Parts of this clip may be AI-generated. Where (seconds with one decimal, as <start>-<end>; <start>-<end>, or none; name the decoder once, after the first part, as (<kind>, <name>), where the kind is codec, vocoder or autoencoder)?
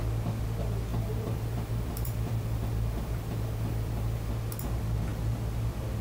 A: 0.9-4.3 (vocoder, BigVGAN v2)